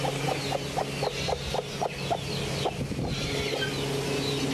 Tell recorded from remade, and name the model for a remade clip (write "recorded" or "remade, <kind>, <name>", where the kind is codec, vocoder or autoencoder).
recorded